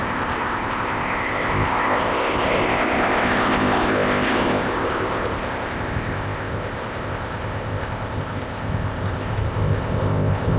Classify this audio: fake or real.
fake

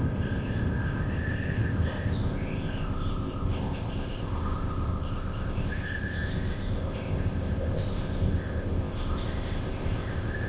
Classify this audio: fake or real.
fake